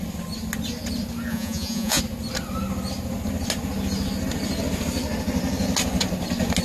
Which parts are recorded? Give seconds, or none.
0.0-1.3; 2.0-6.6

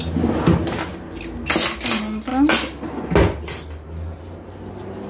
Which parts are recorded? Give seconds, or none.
0.0-5.1